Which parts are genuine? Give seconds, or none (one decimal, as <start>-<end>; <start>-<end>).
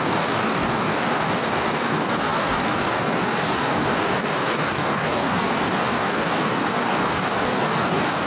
none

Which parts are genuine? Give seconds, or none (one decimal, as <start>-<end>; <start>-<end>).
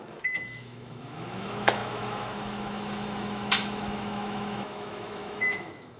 none